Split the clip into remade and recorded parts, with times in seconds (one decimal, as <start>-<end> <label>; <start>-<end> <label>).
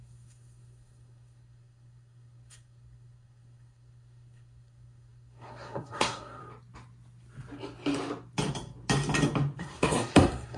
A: 0.0-6.4 remade; 6.4-9.6 recorded; 9.6-10.6 remade